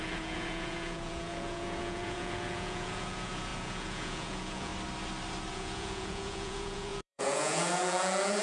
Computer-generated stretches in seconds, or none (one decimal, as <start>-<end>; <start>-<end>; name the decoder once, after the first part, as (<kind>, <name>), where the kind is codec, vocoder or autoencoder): 0.0-4.7 (vocoder, Vocos); 5.5-8.4